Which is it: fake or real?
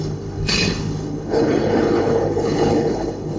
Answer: fake